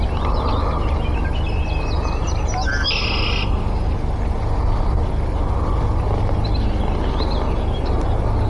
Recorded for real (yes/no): yes